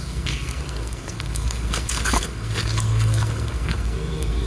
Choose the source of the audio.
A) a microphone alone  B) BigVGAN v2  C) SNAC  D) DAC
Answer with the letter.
C